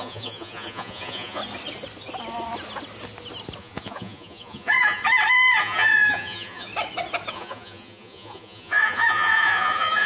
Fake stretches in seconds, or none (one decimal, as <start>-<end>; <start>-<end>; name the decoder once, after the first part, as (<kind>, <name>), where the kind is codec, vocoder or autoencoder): 0.0-1.4 (vocoder, Vocos); 3.6-5.0; 5.6-6.7; 7.3-10.1